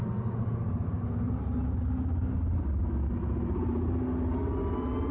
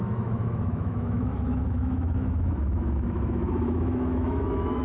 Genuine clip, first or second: first